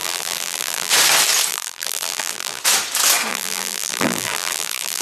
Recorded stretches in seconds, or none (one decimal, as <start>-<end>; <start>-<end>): 0.9-1.5; 2.6-3.3

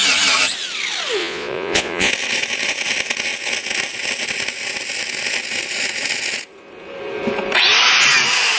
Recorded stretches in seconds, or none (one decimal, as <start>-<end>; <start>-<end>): 0.0-1.2; 2.1-8.6